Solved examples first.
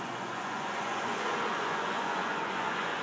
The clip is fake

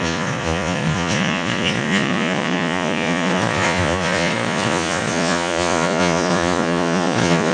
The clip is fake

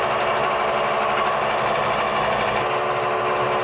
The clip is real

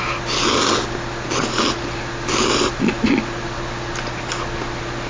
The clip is real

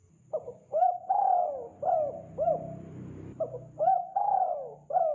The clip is real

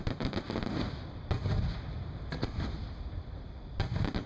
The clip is real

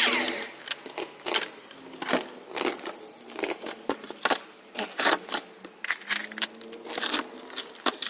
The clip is real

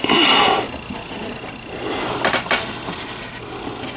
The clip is real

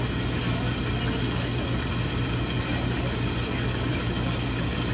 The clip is real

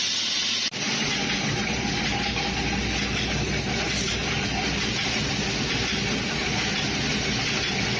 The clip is real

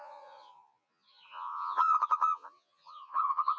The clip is fake